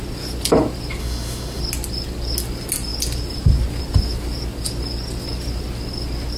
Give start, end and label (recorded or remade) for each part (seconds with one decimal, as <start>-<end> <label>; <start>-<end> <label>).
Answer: 0.0-1.0 recorded; 1.0-1.6 remade; 1.6-6.4 recorded